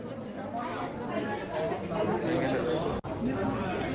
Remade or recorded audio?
recorded